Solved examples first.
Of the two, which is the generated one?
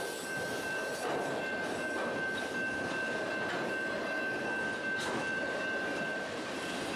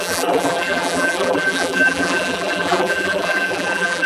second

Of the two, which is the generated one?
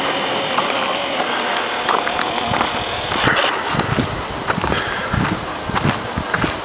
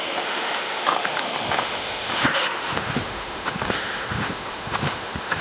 second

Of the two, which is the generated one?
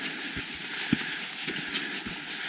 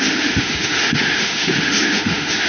second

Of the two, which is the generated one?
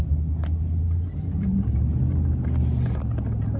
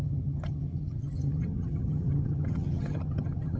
second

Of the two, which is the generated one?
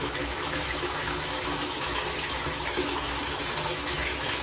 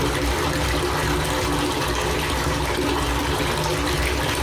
first